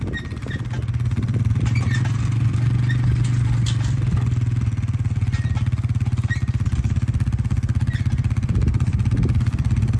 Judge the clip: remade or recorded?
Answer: recorded